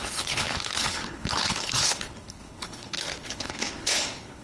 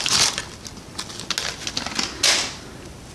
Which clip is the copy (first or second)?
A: first